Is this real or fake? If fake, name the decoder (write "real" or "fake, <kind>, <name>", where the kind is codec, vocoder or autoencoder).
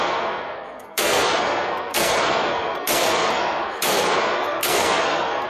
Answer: fake, codec, SNAC